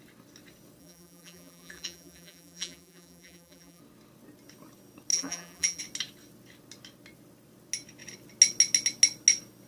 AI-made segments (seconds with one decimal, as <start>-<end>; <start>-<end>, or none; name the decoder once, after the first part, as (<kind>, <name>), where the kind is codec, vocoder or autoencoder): 0.8-3.8 (vocoder, BigVGAN v2); 5.1-5.8